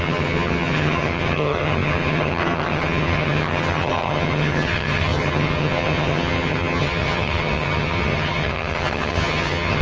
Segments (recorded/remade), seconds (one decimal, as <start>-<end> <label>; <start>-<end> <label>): 0.0-9.8 remade